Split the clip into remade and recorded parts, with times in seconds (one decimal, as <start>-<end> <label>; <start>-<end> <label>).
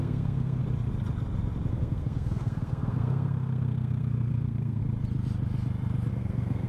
0.0-0.6 remade; 0.6-1.7 recorded; 1.7-4.8 remade; 4.8-6.1 recorded; 6.1-6.7 remade